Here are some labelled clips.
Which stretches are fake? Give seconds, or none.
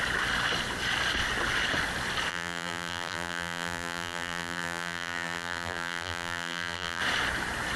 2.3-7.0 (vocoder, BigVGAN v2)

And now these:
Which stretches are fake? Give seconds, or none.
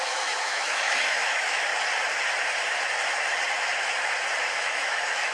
0.0-1.7 (autoencoder, DAC-VAE); 4.4-5.3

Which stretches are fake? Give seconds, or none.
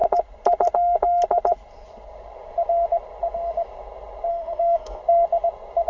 4.3-5.0 (autoencoder, DAC-VAE)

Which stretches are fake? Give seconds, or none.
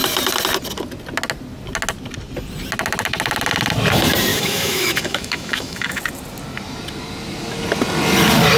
4.3-6.0 (autoencoder, DAC-VAE)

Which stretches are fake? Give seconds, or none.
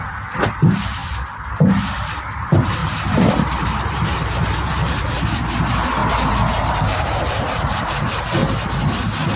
0.0-1.0 (vocoder, BigVGAN v2); 1.5-2.8; 3.3-6.0; 6.5-8.4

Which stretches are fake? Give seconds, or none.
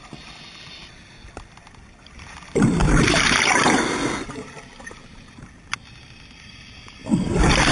none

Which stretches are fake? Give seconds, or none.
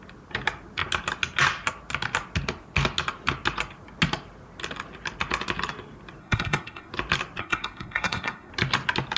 6.2-6.9 (codec, SNAC); 7.4-8.5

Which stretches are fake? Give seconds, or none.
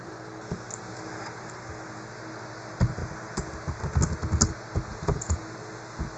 4.9-5.4 (vocoder, Vocos)